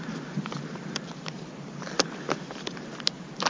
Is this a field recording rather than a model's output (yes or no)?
yes